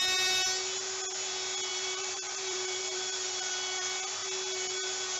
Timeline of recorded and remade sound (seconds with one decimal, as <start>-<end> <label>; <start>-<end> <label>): 0.0-1.7 recorded; 1.7-3.5 remade; 3.5-5.2 recorded